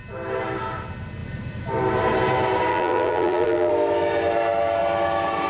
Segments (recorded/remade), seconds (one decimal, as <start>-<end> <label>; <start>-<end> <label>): 0.0-2.7 recorded; 2.7-3.7 remade; 3.7-5.5 recorded